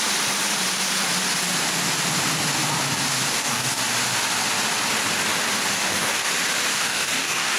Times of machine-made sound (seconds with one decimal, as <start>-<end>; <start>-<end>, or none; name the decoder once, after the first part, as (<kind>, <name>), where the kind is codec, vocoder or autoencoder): 3.3-3.8 (codec, DAC); 5.8-6.3; 6.7-7.6